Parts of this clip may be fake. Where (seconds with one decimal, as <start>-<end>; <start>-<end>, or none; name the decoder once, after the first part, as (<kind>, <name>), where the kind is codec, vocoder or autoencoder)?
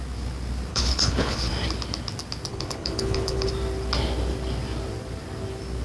0.7-1.5 (codec, HILCodec); 2.5-3.5